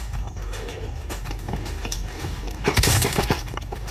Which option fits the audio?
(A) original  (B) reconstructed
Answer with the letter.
B